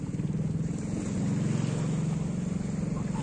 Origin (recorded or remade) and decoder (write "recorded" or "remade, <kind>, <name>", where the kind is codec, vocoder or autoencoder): recorded